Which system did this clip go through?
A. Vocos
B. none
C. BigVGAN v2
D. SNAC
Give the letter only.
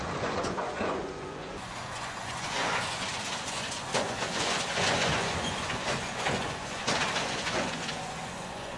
A